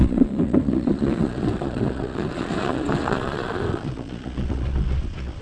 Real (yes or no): no